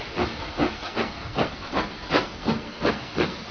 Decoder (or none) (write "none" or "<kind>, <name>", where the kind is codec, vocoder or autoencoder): codec, SNAC